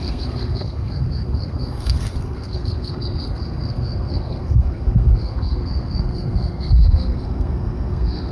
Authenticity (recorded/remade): remade